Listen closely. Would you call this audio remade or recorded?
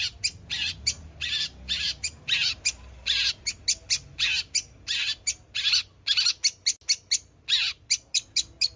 recorded